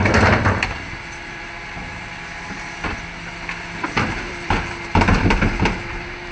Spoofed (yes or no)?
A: yes